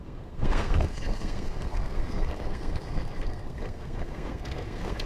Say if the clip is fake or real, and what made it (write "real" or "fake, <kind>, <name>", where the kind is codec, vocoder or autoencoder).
fake, codec, SNAC